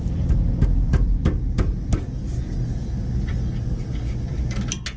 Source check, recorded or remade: recorded